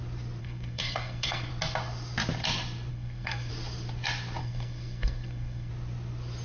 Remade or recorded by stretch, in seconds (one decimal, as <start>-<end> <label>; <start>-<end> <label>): 0.0-0.4 recorded; 0.4-1.5 remade; 1.5-2.9 recorded; 2.9-3.5 remade; 3.5-4.4 recorded; 4.4-5.7 remade; 5.7-6.4 recorded

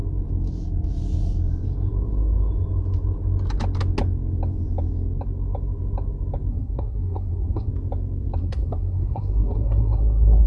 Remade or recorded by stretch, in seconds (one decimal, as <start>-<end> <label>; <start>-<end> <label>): 0.0-6.5 recorded; 6.5-7.7 remade; 7.7-8.4 recorded; 8.4-10.5 remade

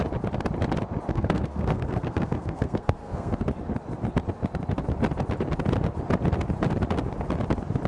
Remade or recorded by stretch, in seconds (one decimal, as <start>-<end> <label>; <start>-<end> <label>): 0.0-1.1 recorded; 1.1-3.4 remade; 3.4-7.9 recorded